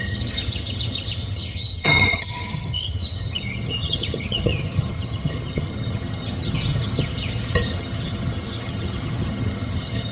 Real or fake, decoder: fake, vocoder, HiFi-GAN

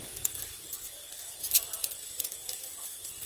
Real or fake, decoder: real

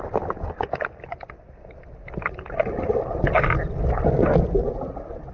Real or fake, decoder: real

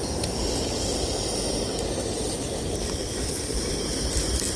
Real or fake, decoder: real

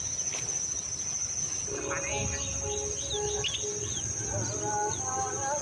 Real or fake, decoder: real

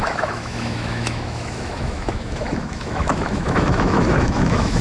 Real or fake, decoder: fake, autoencoder, DAC-VAE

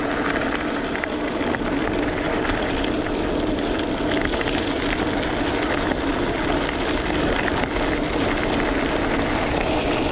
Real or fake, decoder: real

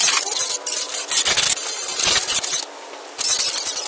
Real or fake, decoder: real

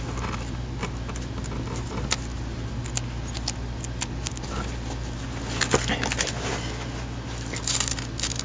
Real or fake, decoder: real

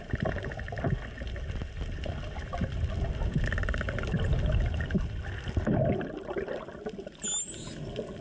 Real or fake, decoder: real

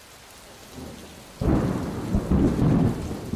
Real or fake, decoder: real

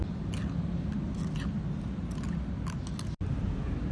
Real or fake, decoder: real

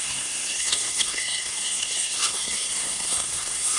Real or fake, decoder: fake, codec, SNAC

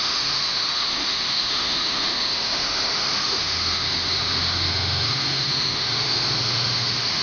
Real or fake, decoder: fake, autoencoder, DAC-VAE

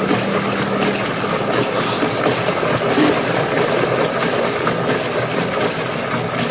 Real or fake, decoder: real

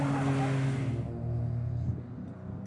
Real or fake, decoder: real